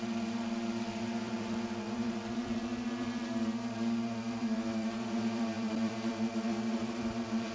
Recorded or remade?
remade